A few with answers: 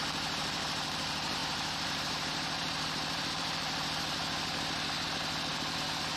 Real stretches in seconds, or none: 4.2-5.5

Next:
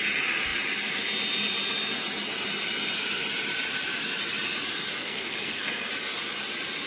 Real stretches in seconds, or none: 0.0-4.9; 5.9-6.9